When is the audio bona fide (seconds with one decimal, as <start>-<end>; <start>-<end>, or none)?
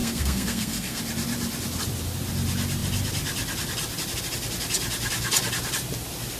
1.0-6.4